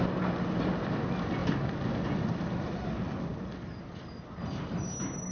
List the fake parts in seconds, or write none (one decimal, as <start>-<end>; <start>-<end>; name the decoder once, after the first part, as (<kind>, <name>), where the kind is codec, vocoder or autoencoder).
none